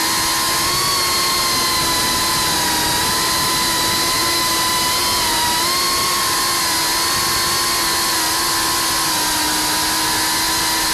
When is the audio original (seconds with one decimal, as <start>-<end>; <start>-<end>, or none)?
0.0-10.9